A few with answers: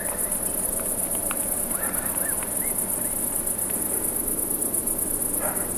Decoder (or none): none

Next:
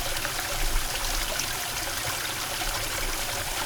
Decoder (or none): none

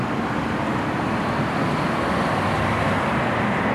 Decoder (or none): none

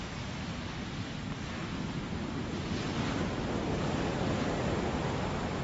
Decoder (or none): none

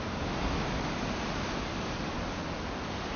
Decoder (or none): none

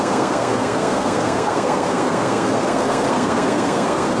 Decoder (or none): codec, SNAC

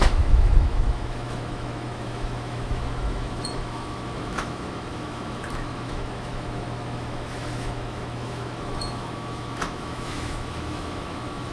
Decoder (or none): autoencoder, DAC-VAE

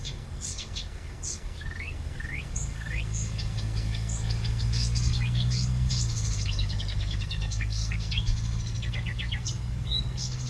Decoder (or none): codec, SNAC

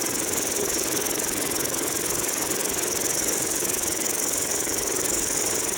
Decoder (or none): codec, DAC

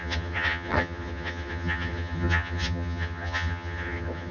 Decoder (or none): vocoder, HiFi-GAN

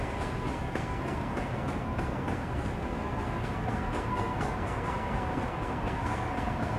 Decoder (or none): codec, SNAC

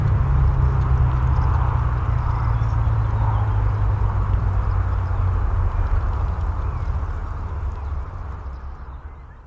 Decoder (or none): none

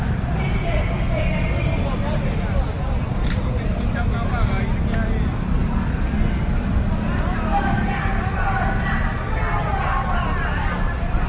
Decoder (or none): none